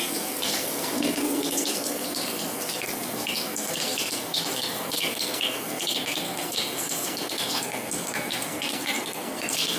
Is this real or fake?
fake